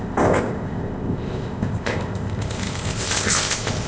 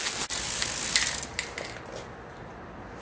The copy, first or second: first